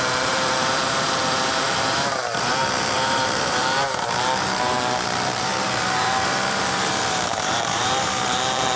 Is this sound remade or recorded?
remade